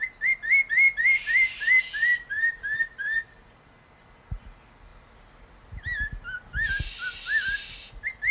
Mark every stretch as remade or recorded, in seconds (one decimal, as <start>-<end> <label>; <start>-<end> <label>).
0.0-2.1 recorded; 2.1-4.2 remade; 4.2-8.3 recorded